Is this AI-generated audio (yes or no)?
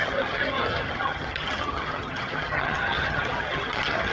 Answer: yes